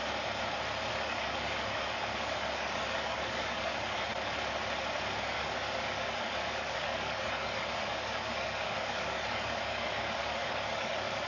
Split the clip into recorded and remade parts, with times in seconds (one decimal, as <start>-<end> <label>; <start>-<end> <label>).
0.0-0.9 recorded; 0.9-4.1 remade; 4.1-5.2 recorded; 5.2-11.3 remade